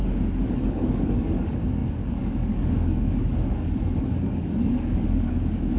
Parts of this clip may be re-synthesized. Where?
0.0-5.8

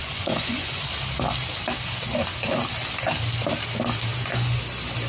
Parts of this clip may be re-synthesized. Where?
0.0-0.9; 4.1-4.6

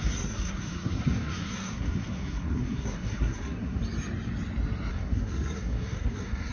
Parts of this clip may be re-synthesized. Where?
0.0-3.8; 4.9-6.5

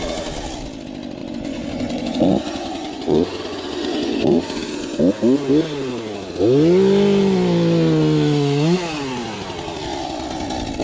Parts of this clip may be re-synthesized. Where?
1.2-5.0